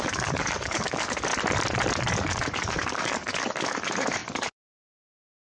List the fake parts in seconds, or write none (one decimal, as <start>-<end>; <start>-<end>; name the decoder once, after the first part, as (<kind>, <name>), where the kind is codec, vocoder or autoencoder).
0.0-1.3 (codec, DAC); 2.1-5.5